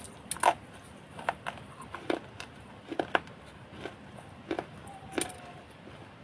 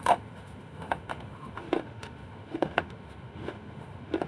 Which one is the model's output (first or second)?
second